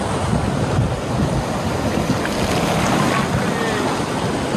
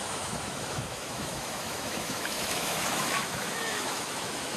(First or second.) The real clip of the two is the first